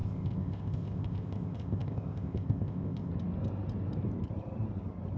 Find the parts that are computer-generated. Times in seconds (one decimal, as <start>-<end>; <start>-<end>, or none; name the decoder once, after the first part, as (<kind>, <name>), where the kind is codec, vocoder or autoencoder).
0.0-3.1 (codec, ZipCodec)